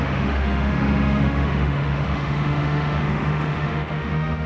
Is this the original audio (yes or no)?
no